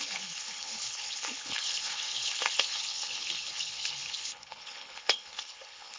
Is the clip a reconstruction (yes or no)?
yes